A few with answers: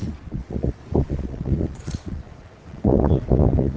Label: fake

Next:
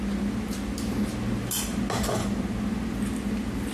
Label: real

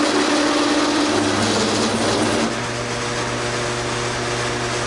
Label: real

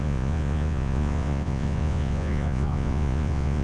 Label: fake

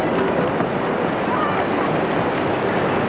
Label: real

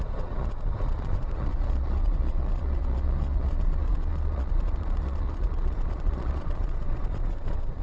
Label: fake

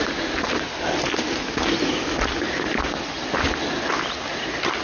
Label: real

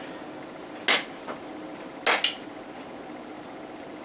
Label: real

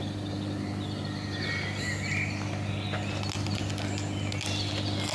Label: real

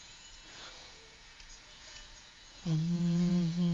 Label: fake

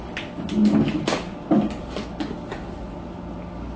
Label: real